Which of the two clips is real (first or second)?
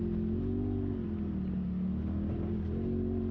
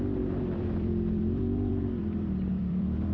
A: first